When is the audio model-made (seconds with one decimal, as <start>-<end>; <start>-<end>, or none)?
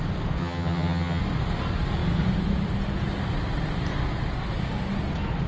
0.4-1.2